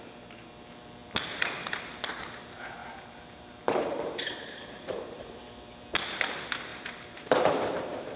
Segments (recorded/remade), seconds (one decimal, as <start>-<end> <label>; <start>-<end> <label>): 0.0-2.8 recorded; 2.8-5.4 remade; 5.4-6.7 recorded; 6.7-8.2 remade